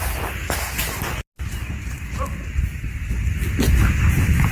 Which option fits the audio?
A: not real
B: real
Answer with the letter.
B